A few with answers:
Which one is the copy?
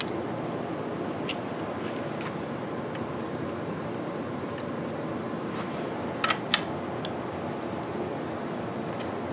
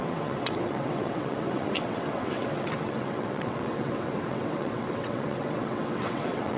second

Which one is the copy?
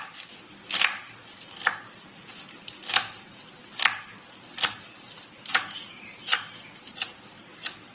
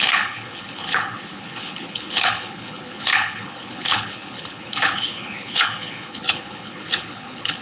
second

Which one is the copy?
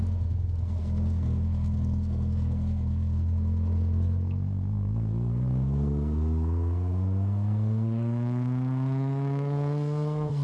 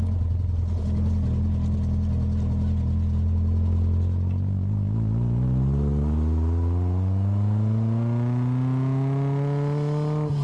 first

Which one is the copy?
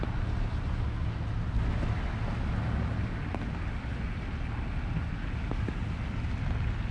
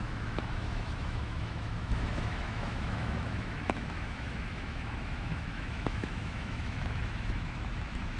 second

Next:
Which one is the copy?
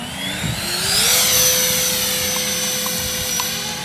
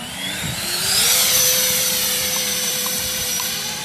second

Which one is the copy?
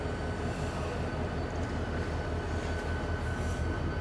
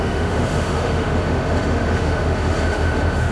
second